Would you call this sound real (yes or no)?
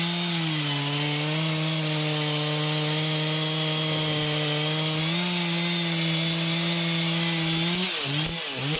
yes